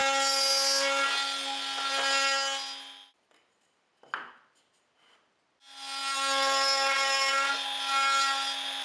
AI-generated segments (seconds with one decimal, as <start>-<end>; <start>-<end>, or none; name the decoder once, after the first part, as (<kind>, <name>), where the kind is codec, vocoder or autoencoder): none